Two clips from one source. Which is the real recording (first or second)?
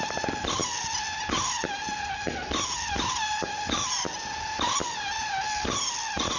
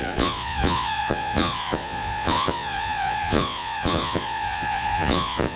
first